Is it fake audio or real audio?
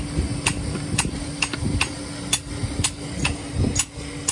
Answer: real